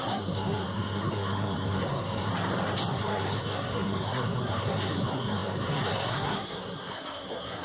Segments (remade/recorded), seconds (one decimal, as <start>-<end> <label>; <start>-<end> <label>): 0.0-2.3 remade; 2.3-2.9 recorded; 2.9-7.6 remade